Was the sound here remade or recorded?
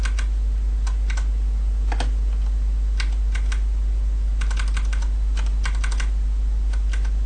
recorded